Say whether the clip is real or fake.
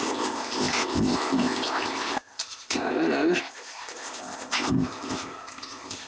fake